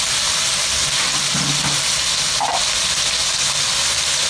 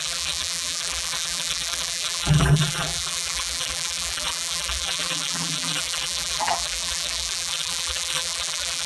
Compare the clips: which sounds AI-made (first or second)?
second